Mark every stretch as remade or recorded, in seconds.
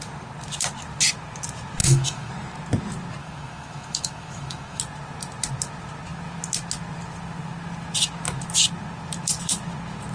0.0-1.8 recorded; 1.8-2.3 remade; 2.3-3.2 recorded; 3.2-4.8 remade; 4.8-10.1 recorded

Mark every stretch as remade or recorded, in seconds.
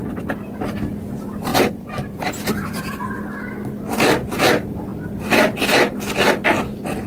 0.0-1.5 recorded; 1.5-3.0 remade; 3.0-7.1 recorded